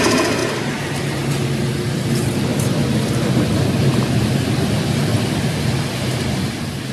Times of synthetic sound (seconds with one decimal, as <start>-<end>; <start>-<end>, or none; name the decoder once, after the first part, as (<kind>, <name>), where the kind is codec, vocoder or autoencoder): 2.5-5.1 (vocoder, BigVGAN v2)